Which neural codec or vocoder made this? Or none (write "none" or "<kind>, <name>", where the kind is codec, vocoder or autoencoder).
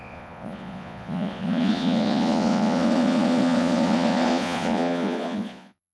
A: vocoder, Vocos